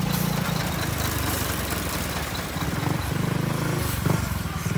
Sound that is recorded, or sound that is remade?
remade